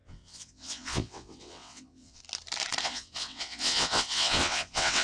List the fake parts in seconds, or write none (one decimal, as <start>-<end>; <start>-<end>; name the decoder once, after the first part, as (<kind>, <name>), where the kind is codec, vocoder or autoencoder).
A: 0.0-2.2 (vocoder, WaveNeXt); 2.8-5.0